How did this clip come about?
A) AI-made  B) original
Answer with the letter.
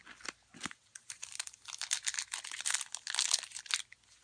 B